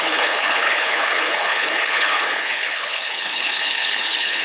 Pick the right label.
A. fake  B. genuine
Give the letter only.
A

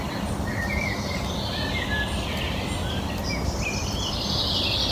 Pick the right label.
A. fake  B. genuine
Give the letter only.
B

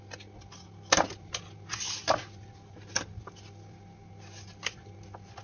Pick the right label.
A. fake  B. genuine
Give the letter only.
B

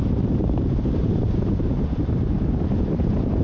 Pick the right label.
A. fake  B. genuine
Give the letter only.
A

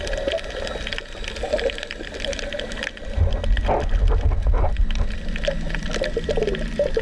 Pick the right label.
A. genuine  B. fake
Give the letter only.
A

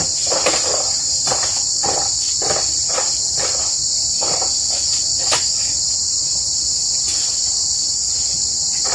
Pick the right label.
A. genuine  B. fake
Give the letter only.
A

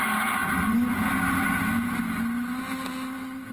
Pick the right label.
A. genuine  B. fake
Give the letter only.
A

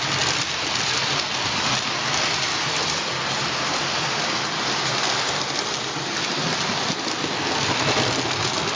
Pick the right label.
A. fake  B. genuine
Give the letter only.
B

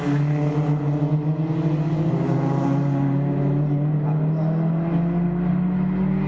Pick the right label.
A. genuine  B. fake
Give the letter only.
A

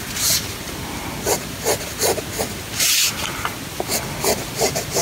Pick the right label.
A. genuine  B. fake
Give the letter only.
A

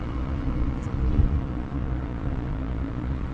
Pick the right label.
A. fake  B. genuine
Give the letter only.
A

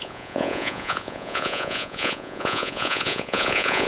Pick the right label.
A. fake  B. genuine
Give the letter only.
A